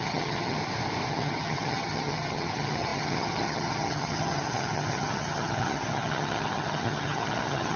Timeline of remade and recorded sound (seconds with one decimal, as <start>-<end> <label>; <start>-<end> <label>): 0.0-0.6 remade; 0.6-1.1 recorded; 1.1-7.8 remade